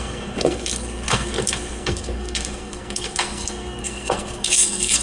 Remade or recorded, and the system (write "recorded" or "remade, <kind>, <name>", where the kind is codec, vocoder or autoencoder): remade, codec, SNAC